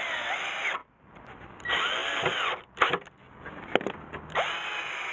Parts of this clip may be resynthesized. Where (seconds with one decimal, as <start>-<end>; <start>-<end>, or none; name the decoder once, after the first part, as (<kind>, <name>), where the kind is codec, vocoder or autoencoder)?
0.8-1.6 (vocoder, BigVGAN v2)